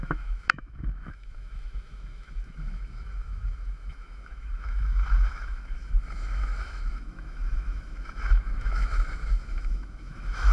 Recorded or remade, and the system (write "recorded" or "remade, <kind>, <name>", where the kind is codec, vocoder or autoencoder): remade, autoencoder, DAC-VAE